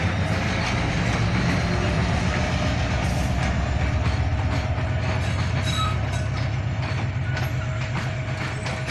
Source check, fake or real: real